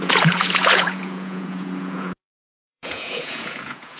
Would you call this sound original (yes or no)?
no